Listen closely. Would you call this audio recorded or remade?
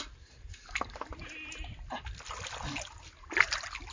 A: recorded